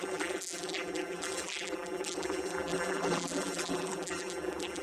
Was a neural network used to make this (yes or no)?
yes